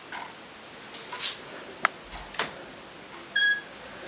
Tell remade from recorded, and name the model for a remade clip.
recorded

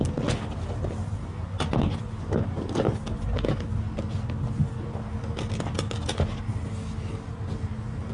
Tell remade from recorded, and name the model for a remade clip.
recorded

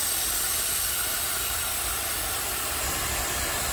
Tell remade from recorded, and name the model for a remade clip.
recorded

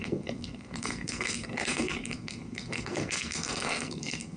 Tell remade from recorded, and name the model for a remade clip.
remade, codec, SNAC